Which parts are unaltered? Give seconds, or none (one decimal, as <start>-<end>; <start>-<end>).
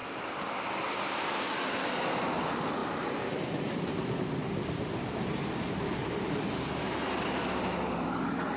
0.0-8.6